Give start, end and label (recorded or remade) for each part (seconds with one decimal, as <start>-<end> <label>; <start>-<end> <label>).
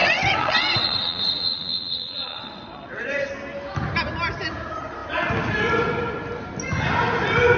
0.0-3.3 remade; 3.3-7.6 recorded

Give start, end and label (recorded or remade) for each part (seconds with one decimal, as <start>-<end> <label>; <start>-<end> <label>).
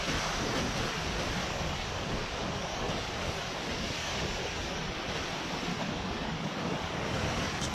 0.0-1.4 recorded; 1.4-4.8 remade; 4.8-5.7 recorded; 5.7-7.7 remade